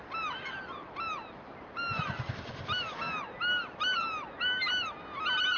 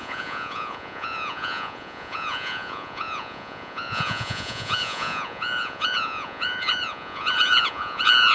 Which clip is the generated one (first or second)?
second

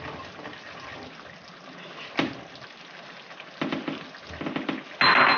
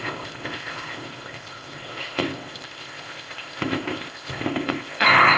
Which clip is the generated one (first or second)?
second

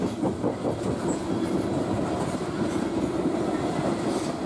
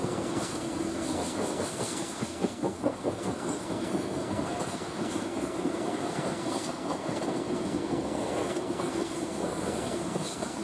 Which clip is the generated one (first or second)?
second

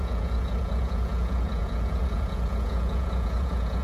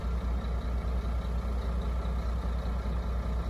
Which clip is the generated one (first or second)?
first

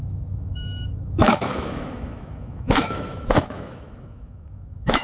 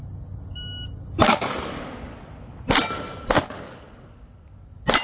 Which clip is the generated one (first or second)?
first